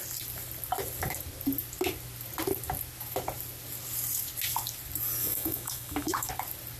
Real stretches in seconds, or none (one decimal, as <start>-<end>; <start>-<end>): 0.0-5.2; 6.3-6.8